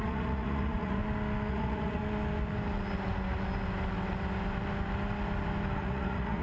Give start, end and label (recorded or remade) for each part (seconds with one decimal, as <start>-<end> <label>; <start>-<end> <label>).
0.0-1.0 remade; 1.0-1.5 recorded; 1.5-2.0 remade; 2.0-5.8 recorded; 5.8-6.4 remade